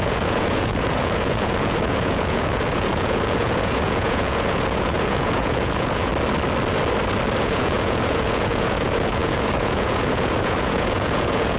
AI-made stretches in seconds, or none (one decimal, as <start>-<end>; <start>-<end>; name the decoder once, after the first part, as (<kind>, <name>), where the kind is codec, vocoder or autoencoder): 0.0-6.1 (vocoder, Vocos); 7.4-11.6